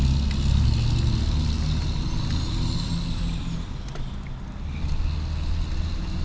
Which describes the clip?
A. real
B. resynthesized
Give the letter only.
A